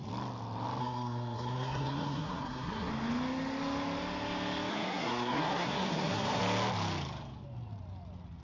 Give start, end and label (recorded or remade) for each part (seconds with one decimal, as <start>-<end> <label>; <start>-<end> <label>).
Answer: 0.0-0.8 recorded; 0.8-2.9 remade; 2.9-4.7 recorded; 4.7-6.4 remade; 6.4-8.4 recorded